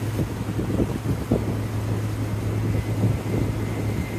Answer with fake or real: real